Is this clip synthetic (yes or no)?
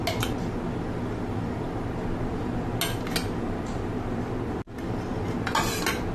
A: no